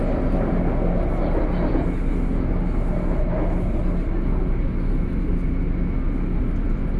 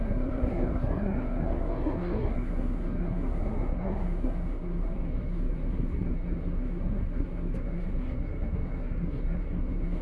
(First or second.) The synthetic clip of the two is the second